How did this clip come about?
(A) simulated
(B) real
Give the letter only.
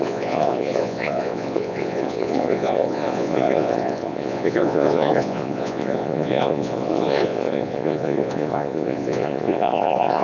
A